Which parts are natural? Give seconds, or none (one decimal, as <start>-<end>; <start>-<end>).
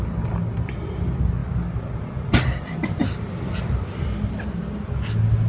0.0-1.4; 4.3-5.5